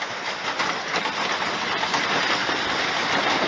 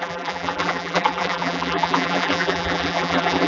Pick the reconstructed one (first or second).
second